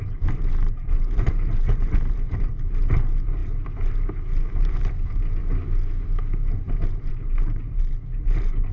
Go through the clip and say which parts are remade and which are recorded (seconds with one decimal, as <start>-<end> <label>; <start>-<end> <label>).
0.0-3.4 remade; 3.4-4.7 recorded; 4.7-5.4 remade; 5.4-7.1 recorded; 7.1-8.7 remade